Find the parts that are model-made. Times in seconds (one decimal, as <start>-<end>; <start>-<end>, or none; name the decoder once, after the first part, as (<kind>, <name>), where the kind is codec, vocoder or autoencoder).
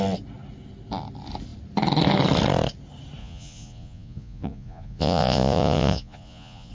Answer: 3.2-6.7 (vocoder, Vocos)